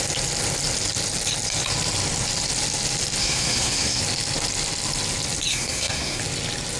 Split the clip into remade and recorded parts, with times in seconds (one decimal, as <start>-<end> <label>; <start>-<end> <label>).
0.0-3.2 recorded; 3.2-4.0 remade; 4.0-5.5 recorded; 5.5-6.2 remade; 6.2-6.8 recorded